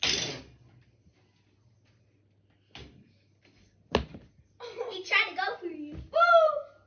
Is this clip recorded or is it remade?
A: recorded